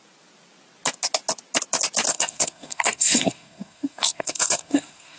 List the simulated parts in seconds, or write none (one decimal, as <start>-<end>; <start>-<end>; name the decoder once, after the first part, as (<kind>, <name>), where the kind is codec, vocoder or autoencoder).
2.1-5.2 (codec, SNAC)